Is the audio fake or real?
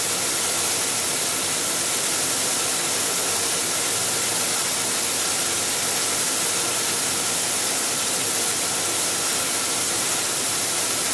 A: real